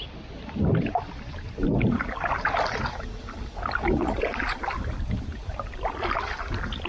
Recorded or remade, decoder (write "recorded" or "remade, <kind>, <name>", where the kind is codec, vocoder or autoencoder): recorded